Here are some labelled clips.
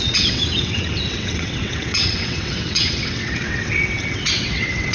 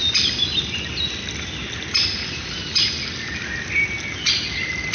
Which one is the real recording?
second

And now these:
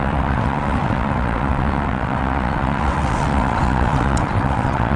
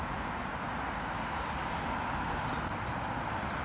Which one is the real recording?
second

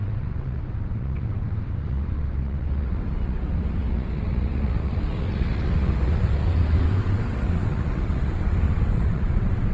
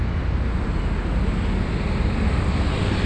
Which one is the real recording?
second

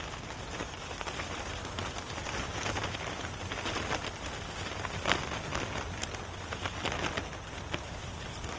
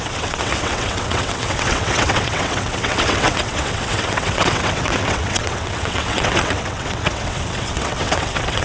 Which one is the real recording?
first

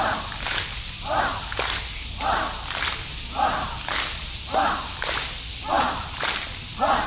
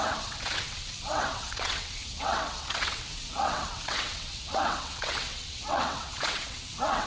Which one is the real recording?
first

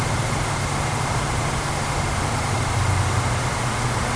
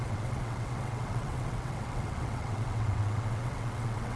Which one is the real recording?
first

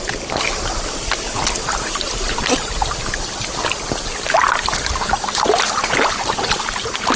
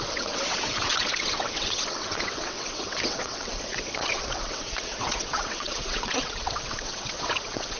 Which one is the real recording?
first